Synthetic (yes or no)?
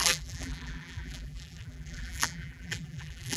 yes